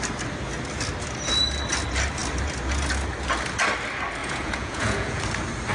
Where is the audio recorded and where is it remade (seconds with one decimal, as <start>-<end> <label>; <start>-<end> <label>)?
0.0-4.2 recorded; 4.2-5.2 remade; 5.2-5.7 recorded

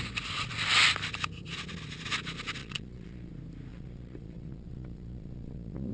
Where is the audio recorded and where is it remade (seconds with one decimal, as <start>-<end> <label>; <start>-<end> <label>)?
0.0-2.6 recorded; 2.6-3.3 remade; 3.3-3.7 recorded; 3.7-5.9 remade

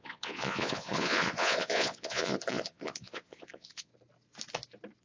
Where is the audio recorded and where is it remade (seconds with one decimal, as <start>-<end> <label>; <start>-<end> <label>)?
0.0-3.9 remade; 3.9-5.0 recorded

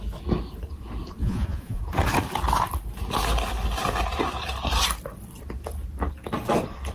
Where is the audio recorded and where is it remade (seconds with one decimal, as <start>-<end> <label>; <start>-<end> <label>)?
0.0-1.2 recorded; 1.2-1.8 remade; 1.8-6.9 recorded

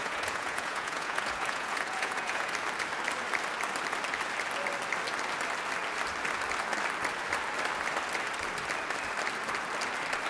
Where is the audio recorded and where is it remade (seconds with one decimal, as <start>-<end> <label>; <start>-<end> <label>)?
0.0-2.5 remade; 2.5-10.3 recorded

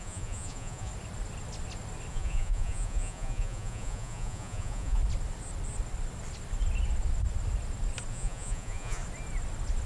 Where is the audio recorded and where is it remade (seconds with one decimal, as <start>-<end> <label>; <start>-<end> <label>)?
0.0-0.9 remade; 0.9-2.1 recorded; 2.1-5.0 remade; 5.0-8.1 recorded; 8.1-9.0 remade; 9.0-9.9 recorded

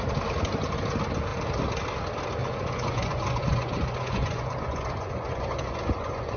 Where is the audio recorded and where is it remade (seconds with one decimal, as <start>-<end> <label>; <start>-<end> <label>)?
0.0-2.4 recorded; 2.4-6.4 remade

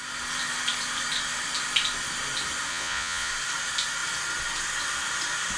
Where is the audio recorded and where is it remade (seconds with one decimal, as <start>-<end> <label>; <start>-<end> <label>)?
0.0-2.7 recorded; 2.7-3.3 remade; 3.3-5.6 recorded